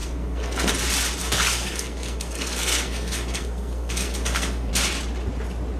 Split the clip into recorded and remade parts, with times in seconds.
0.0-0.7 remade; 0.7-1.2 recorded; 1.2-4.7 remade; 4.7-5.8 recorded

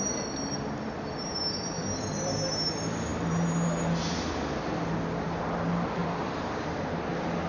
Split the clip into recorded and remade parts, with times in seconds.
0.0-6.0 recorded; 6.0-7.1 remade; 7.1-7.5 recorded

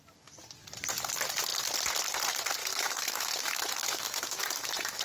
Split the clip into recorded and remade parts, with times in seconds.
0.0-2.6 recorded; 2.6-5.0 remade

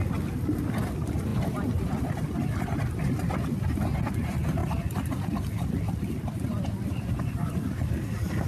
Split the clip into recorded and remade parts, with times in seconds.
0.0-8.5 recorded

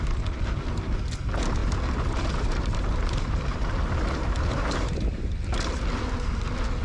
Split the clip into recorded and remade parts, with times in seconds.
0.0-1.6 recorded; 1.6-5.3 remade; 5.3-6.8 recorded

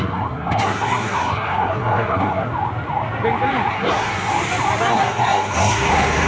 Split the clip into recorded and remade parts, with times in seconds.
0.0-2.5 remade; 2.5-3.7 recorded; 3.7-4.3 remade; 4.3-4.9 recorded; 4.9-6.3 remade